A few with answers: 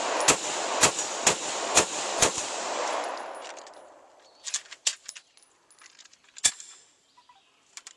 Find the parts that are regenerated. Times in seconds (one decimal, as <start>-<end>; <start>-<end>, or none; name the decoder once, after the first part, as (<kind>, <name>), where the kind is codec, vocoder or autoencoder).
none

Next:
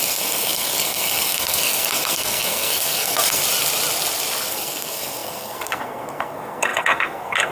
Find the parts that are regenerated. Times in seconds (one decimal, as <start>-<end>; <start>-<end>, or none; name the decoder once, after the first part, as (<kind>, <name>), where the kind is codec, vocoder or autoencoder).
0.0-3.4 (codec, SNAC); 4.5-7.5

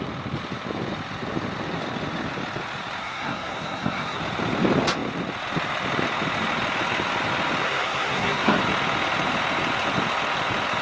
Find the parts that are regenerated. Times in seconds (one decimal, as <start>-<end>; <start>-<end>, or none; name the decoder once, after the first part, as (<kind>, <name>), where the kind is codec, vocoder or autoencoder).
3.0-4.2 (codec, SNAC); 7.6-8.6

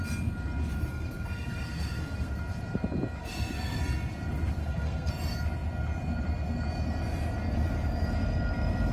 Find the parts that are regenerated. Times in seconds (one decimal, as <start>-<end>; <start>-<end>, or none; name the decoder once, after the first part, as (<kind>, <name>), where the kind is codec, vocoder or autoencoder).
0.9-2.3 (codec, SNAC); 3.2-3.8; 4.6-5.1

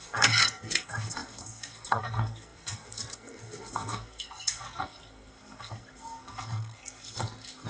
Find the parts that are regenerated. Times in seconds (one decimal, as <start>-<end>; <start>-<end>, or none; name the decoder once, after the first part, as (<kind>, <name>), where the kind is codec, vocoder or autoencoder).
0.0-7.7 (codec, SNAC)